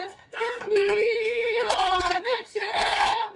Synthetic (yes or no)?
yes